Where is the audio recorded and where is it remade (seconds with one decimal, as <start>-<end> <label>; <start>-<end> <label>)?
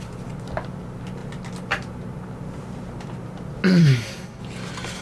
0.0-3.8 recorded; 3.8-4.4 remade; 4.4-5.0 recorded